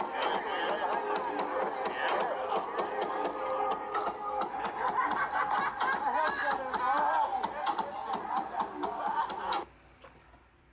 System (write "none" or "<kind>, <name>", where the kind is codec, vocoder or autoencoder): none